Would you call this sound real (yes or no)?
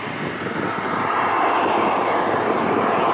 yes